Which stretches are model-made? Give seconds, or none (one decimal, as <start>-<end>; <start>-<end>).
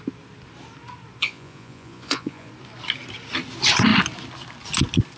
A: 1.2-2.5